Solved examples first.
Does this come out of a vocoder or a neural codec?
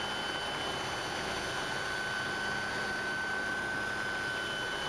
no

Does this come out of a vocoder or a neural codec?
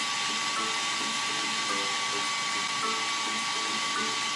no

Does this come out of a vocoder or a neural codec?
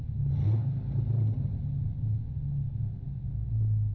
no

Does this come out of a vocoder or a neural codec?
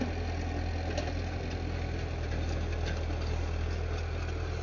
no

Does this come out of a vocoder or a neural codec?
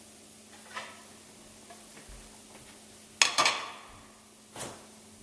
no